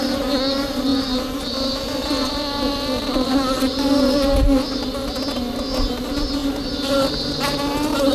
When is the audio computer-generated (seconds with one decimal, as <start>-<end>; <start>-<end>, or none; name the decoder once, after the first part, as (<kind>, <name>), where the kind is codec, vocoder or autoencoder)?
none